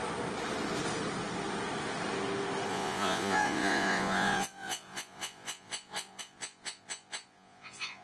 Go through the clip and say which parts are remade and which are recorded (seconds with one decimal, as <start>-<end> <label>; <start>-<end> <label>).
0.0-2.7 recorded; 2.7-8.0 remade